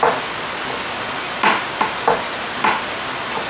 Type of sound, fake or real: real